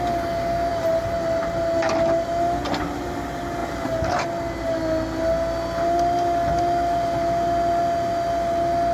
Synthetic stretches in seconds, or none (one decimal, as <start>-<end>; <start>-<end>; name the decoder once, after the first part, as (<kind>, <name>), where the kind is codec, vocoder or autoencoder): none